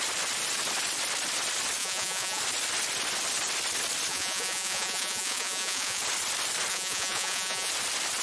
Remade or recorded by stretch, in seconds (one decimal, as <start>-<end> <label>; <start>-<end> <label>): 0.0-1.8 recorded; 1.8-2.4 remade; 2.4-4.1 recorded; 4.1-6.0 remade; 6.0-6.7 recorded; 6.7-7.7 remade; 7.7-8.2 recorded

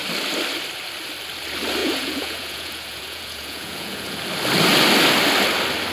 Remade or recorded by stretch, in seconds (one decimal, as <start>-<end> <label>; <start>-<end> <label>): 0.0-1.8 recorded; 1.8-4.2 remade; 4.2-5.9 recorded